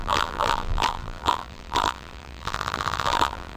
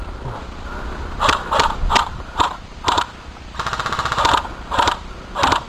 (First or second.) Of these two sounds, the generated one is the first